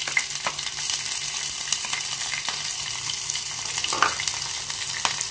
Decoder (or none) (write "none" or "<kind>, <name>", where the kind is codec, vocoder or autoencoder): none